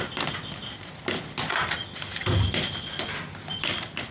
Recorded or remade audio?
recorded